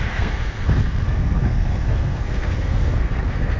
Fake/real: fake